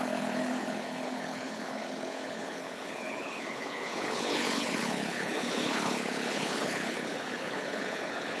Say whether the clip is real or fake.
fake